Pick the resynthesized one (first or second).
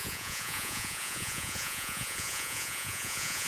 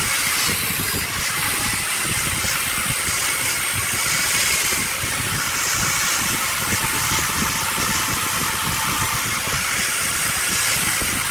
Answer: first